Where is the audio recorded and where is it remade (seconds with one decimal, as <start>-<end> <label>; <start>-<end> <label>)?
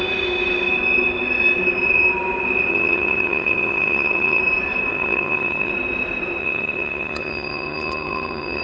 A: 0.0-2.7 recorded; 2.7-4.4 remade; 4.4-4.9 recorded; 4.9-5.7 remade; 5.7-6.4 recorded; 6.4-8.6 remade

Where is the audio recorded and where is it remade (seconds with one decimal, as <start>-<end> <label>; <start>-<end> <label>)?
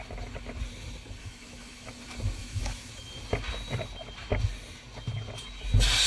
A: 0.0-1.2 recorded; 1.2-1.9 remade; 1.9-2.4 recorded; 2.4-2.9 remade; 2.9-6.1 recorded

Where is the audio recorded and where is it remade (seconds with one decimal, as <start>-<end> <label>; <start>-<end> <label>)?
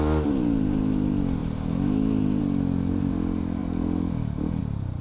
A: 0.0-5.0 recorded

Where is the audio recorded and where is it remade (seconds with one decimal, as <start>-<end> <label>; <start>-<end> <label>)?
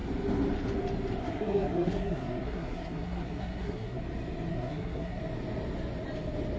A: 0.0-1.2 recorded; 1.2-4.0 remade; 4.0-4.5 recorded; 4.5-5.2 remade; 5.2-6.6 recorded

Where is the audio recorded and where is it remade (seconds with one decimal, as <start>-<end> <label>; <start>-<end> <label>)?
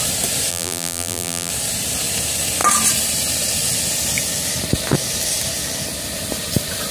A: 0.0-0.5 recorded; 0.5-1.5 remade; 1.5-6.9 recorded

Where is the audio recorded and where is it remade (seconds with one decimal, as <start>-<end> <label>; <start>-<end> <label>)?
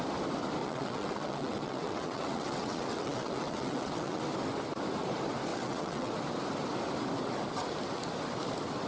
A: 0.0-0.6 recorded; 0.6-4.2 remade; 4.2-5.5 recorded; 5.5-6.1 remade; 6.1-8.9 recorded